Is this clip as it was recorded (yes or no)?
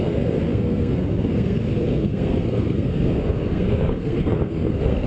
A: no